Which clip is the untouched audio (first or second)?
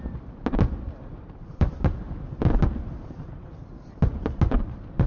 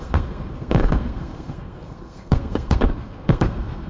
first